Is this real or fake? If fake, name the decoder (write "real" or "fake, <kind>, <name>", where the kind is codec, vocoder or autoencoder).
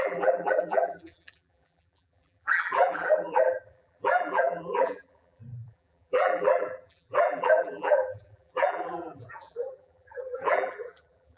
fake, vocoder, BigVGAN v2